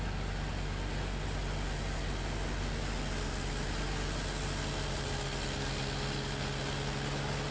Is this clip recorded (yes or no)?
yes